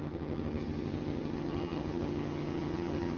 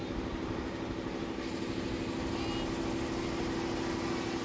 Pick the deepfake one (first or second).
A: first